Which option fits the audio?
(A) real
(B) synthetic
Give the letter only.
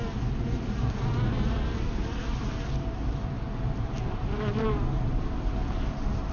A